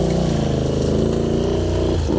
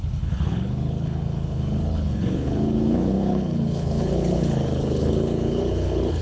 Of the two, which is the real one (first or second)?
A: first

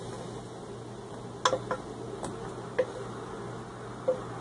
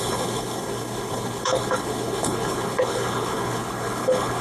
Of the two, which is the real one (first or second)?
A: first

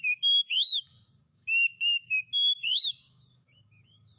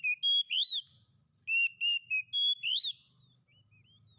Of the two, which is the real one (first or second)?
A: second